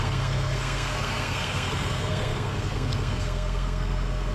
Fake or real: fake